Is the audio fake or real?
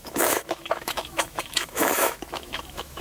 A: fake